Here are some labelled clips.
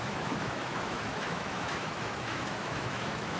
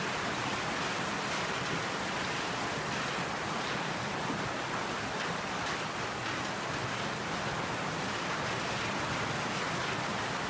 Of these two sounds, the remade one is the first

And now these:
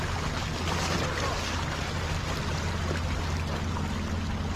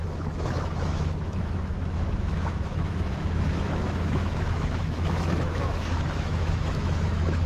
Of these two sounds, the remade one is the second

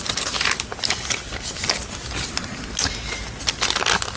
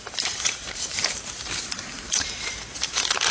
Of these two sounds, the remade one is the second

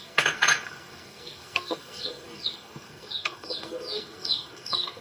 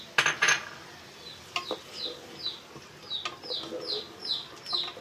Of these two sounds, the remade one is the first